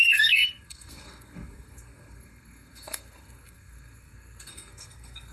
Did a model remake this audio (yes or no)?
yes